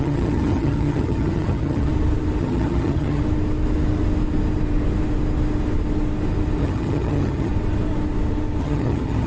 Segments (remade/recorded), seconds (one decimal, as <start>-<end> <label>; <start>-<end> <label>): 0.0-1.9 remade; 1.9-2.4 recorded; 2.4-3.2 remade; 3.2-6.6 recorded; 6.6-7.5 remade; 7.5-8.6 recorded; 8.6-9.3 remade